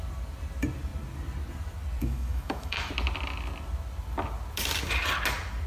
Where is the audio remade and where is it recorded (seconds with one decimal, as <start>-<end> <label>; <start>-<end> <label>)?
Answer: 0.0-2.0 recorded; 2.0-2.9 remade; 2.9-5.7 recorded